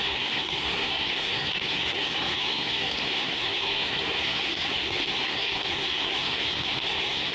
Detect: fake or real fake